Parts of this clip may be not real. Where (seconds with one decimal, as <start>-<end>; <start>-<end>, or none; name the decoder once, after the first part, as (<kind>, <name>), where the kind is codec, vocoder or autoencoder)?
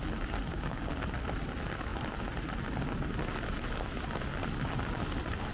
0.5-1.0 (codec, DAC)